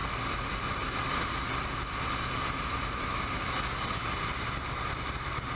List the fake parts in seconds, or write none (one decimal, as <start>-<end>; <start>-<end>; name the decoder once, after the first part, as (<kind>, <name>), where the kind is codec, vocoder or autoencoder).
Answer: none